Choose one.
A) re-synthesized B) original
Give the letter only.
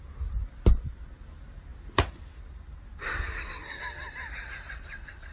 B